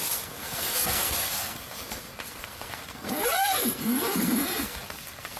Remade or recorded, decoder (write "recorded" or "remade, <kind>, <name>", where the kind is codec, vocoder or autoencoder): remade, codec, SNAC